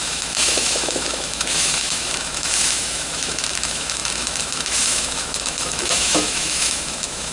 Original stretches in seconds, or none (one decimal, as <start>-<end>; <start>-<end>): none